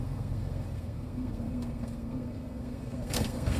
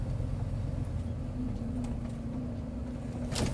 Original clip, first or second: second